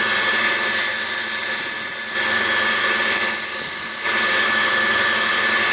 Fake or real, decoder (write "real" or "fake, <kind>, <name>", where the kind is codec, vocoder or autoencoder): real